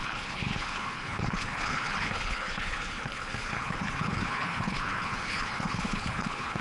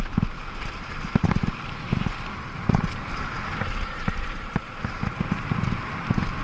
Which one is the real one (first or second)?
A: second